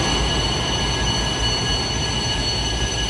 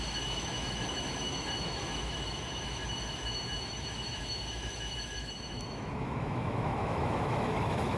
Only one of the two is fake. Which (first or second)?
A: second